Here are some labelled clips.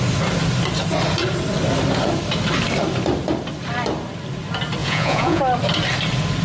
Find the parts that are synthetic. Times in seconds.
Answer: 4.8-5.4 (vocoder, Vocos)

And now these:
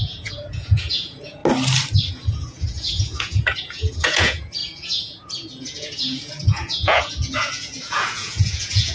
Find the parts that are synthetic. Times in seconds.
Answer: 0.0-1.4 (vocoder, Vocos); 2.1-8.9